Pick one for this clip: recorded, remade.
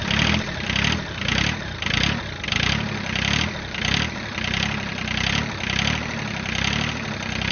remade